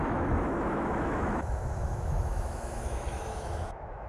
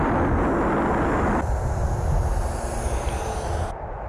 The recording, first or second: second